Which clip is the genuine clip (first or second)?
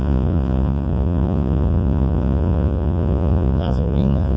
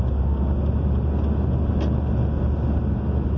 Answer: second